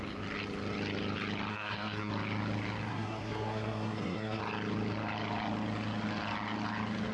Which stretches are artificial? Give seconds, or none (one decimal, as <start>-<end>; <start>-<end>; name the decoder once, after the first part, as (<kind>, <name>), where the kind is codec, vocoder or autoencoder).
1.5-2.1 (codec, SNAC); 2.9-4.4